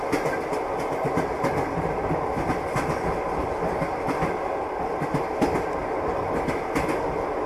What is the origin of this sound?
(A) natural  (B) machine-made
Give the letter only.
A